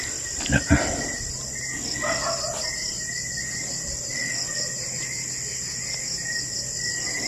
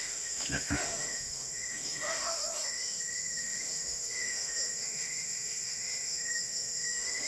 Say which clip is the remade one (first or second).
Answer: second